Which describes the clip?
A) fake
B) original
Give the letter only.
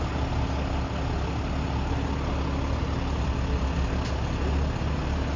B